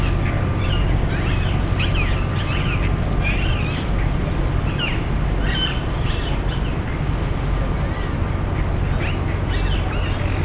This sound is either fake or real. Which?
real